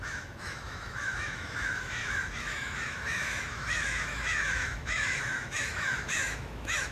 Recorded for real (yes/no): no